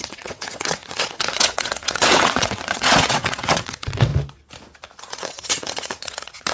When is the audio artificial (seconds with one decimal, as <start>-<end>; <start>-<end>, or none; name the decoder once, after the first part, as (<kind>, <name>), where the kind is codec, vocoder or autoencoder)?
0.0-4.1 (vocoder, WaveNeXt); 5.1-6.5